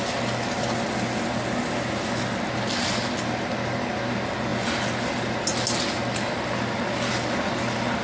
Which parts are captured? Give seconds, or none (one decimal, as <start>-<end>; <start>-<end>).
0.0-8.0